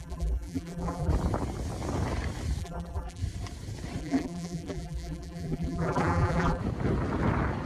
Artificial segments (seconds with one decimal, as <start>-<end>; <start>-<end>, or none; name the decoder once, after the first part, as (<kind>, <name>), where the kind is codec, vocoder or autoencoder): 0.0-1.1 (vocoder, BigVGAN v2); 2.6-3.2; 4.0-6.6